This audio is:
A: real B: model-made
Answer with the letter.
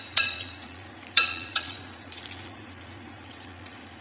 B